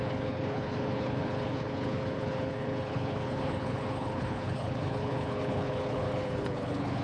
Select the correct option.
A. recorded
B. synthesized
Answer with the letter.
B